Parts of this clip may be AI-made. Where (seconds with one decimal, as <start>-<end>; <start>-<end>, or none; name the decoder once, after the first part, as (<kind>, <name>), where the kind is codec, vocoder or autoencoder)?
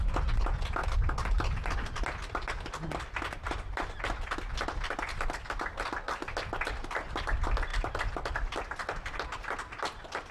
none